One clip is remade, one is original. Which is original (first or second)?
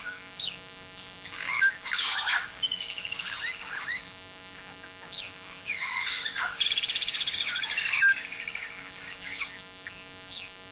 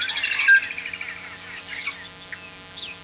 second